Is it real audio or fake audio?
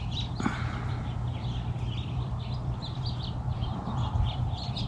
fake